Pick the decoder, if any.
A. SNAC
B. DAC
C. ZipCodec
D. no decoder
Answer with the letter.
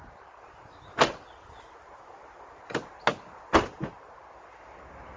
D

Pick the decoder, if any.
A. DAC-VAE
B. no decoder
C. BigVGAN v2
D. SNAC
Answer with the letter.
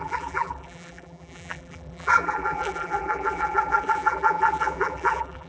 C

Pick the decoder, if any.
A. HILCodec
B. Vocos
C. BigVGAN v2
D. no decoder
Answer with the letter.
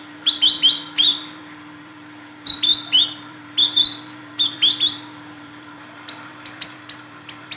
C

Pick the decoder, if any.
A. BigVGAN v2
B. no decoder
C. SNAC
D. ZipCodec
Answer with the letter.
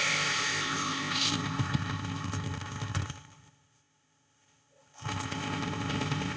D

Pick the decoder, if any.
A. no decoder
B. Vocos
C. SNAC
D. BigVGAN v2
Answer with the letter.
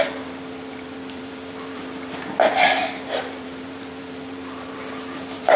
D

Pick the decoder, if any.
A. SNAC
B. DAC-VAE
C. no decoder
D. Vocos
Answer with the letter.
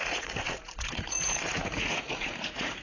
D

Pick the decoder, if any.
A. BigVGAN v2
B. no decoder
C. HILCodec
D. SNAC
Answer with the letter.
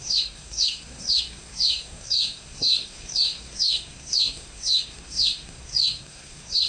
D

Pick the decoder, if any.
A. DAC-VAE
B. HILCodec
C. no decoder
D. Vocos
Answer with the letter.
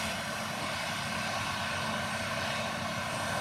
C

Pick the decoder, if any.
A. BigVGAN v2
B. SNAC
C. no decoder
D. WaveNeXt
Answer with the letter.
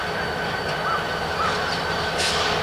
C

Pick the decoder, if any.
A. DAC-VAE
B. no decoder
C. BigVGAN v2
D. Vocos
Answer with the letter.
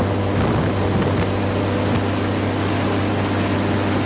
B